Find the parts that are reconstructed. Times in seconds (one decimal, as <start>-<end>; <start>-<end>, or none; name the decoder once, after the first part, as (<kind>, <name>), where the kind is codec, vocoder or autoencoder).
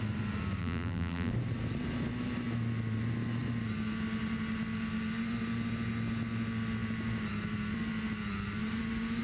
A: 0.6-1.3 (vocoder, BigVGAN v2)